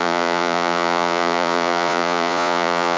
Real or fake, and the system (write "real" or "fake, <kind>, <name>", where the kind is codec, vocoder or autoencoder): fake, vocoder, Vocos